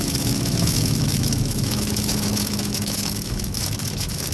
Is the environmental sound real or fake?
fake